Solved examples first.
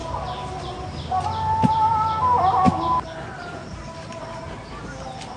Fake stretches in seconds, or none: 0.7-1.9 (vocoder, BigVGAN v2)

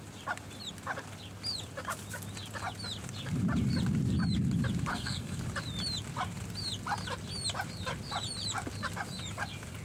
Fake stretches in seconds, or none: 4.9-5.4 (codec, SNAC)

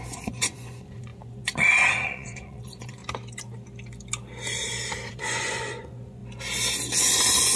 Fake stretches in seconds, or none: 0.0-3.0 (vocoder, Vocos); 5.1-6.2; 7.0-7.6

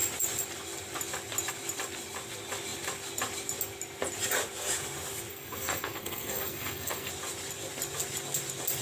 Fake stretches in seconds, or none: 5.3-7.1 (codec, SNAC)

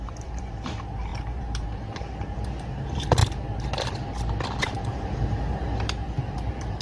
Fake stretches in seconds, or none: 0.0-3.2 (vocoder, BigVGAN v2); 4.5-6.8

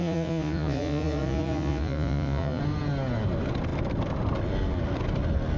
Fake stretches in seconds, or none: 0.0-2.6 (vocoder, Vocos)